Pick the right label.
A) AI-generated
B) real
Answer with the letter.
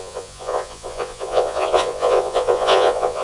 A